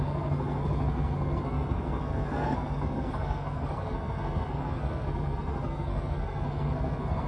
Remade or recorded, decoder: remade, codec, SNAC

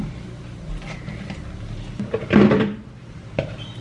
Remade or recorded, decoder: recorded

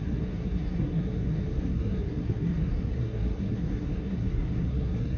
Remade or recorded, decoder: remade, codec, SNAC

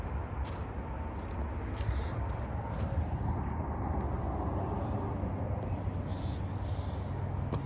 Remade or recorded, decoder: recorded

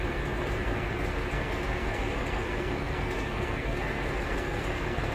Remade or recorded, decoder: remade, codec, SNAC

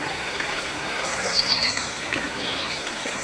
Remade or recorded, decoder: remade, codec, SNAC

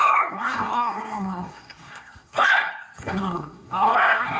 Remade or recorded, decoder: remade, codec, SNAC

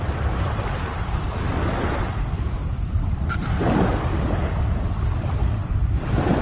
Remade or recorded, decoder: recorded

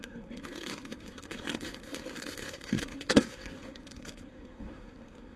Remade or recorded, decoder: remade, codec, SNAC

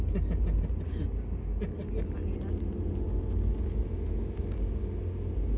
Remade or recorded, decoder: recorded